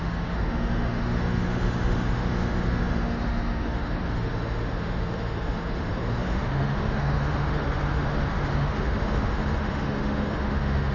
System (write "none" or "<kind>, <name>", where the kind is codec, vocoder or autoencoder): autoencoder, DAC-VAE